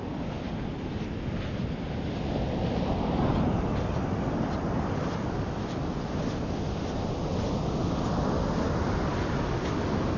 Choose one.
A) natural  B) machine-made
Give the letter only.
A